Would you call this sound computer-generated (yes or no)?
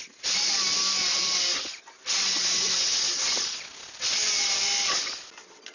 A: no